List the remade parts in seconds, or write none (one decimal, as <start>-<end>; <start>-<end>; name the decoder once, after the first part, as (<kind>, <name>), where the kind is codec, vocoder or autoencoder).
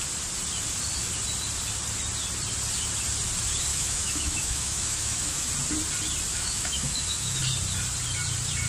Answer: 3.7-5.5 (autoencoder, DAC-VAE); 6.3-7.4